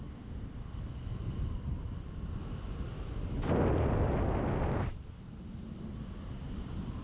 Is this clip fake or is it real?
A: real